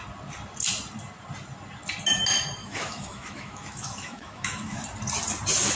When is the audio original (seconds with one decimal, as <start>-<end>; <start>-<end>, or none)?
0.0-2.6; 4.8-5.8